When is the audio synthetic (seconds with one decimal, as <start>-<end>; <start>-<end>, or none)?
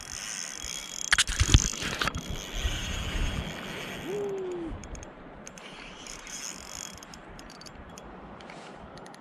4.8-6.4; 7.2-9.2